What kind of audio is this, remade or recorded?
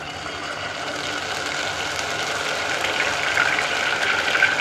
recorded